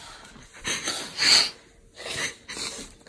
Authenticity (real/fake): real